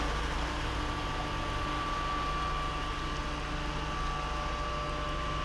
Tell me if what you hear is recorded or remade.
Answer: recorded